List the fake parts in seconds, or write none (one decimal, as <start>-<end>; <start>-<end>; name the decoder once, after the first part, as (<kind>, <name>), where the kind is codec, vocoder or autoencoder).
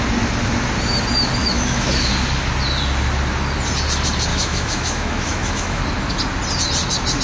1.4-2.1 (autoencoder, DAC-VAE); 4.3-5.8